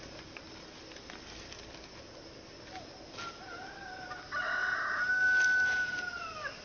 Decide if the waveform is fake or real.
real